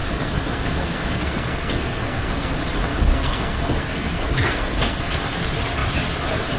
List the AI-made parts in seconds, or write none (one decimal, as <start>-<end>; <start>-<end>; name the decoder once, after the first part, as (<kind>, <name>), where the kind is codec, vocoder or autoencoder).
0.0-2.5 (codec, SNAC); 2.9-5.2